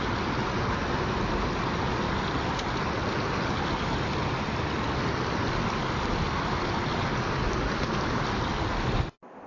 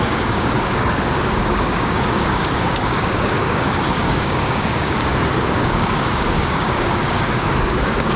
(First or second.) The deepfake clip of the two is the second